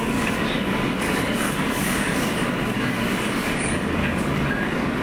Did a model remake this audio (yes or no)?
yes